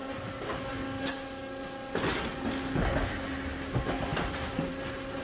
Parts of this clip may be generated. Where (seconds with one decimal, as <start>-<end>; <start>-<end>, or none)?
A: 4.1-4.8